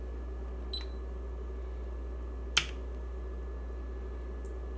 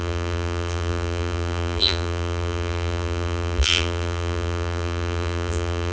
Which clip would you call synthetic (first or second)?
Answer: second